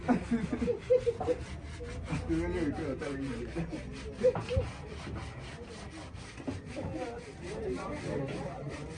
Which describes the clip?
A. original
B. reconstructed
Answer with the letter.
A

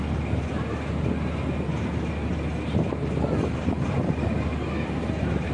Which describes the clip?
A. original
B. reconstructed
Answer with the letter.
A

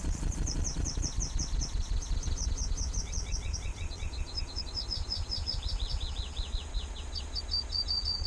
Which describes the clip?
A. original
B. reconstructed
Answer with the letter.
B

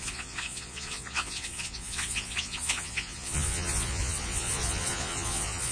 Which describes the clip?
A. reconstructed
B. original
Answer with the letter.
A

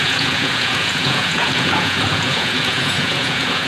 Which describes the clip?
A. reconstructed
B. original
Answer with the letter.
A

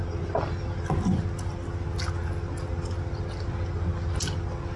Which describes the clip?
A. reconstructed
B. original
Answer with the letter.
B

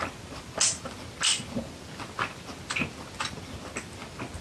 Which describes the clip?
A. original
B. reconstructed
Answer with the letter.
A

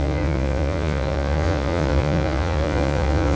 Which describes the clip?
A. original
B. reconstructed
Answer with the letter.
B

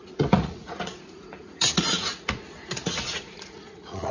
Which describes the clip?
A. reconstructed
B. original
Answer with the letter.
A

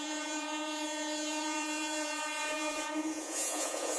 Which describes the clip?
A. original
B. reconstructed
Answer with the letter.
B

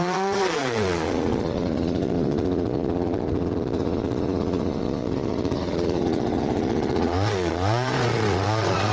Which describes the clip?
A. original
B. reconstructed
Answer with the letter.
B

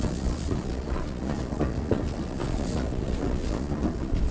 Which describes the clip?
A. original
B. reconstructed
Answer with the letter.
B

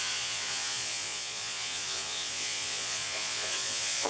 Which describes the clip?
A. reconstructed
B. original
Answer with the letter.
A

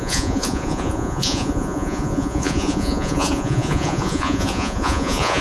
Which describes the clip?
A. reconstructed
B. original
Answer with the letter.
A